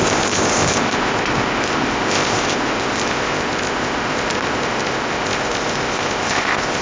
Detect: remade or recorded remade